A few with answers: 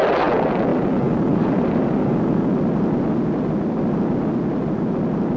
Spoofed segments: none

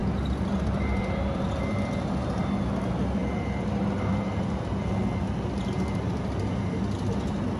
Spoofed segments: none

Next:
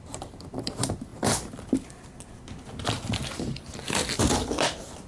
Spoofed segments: none

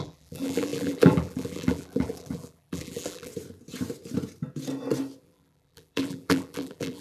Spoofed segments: 0.0-3.3 (vocoder, BigVGAN v2); 5.2-7.0

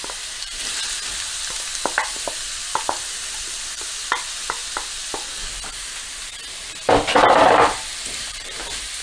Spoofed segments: 0.0-1.7 (vocoder, BigVGAN v2); 3.1-4.6; 7.0-9.0

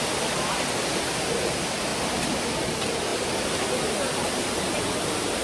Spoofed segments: none

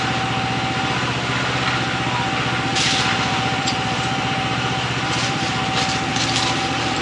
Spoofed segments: 2.7-5.6 (vocoder, BigVGAN v2); 6.1-7.0